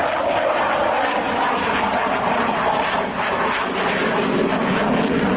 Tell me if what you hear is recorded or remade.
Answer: recorded